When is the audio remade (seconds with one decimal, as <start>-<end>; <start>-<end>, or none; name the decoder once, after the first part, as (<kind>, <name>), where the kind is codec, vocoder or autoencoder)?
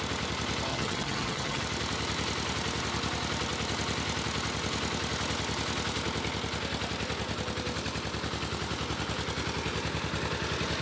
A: 0.7-1.6 (vocoder, HiFi-GAN)